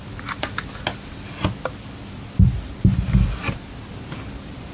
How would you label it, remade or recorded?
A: recorded